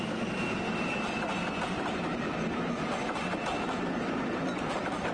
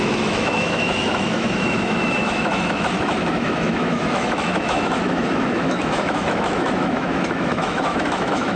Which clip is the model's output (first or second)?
second